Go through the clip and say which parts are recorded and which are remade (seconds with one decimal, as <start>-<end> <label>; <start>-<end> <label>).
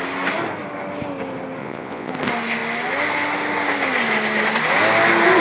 0.0-1.6 recorded; 1.6-2.1 remade; 2.1-5.4 recorded